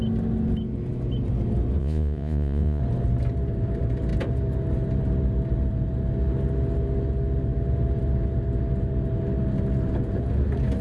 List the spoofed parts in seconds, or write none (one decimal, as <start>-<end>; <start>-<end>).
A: 1.8-2.8